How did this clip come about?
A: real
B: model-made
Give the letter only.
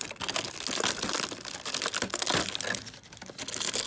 A